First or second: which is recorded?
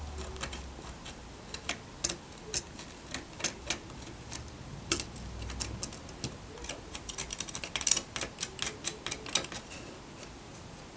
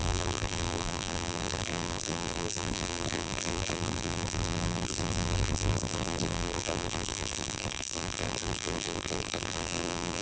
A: first